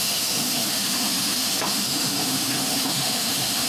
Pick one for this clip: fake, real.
fake